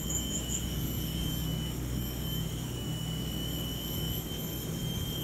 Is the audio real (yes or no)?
no